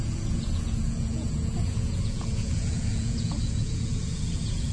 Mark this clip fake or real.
fake